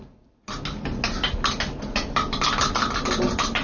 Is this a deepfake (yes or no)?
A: no